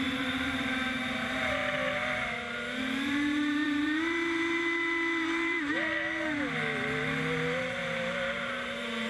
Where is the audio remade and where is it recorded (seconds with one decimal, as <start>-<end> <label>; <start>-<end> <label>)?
0.0-1.6 remade; 1.6-2.8 recorded; 2.8-5.8 remade; 5.8-8.5 recorded; 8.5-9.1 remade